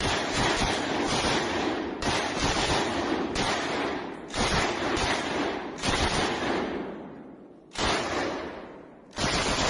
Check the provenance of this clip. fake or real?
real